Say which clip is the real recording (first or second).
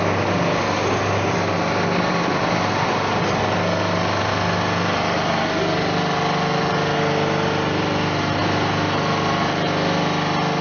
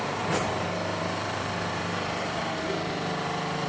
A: first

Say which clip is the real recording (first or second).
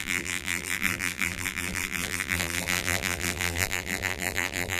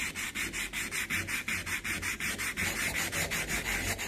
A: second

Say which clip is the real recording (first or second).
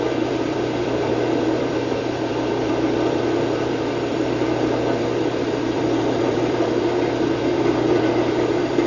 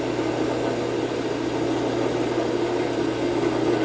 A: second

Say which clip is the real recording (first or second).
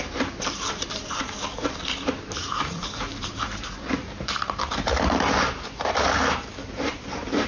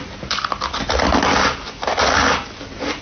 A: second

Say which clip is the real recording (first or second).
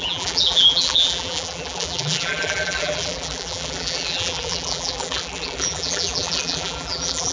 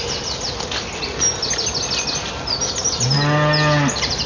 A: second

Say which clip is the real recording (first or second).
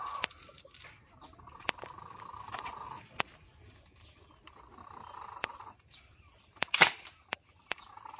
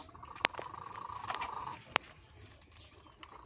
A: second